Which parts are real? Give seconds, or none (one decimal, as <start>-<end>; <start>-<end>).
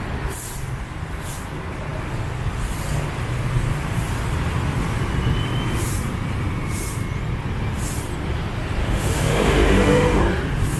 0.0-8.8; 10.2-10.8